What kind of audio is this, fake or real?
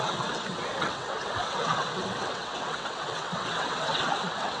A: fake